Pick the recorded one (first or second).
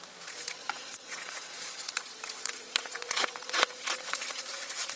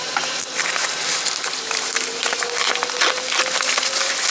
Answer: second